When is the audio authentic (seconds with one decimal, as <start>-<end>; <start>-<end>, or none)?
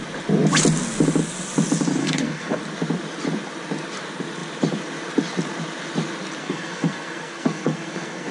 0.0-2.0; 2.6-6.4